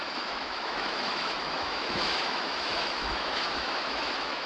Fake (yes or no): yes